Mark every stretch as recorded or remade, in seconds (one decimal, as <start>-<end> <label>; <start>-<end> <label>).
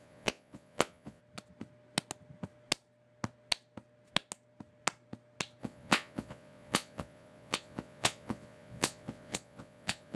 0.0-1.2 remade; 1.2-5.6 recorded; 5.6-10.2 remade